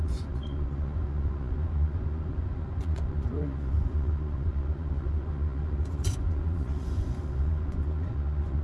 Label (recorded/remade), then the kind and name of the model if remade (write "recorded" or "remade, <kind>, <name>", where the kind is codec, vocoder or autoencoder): remade, vocoder, Vocos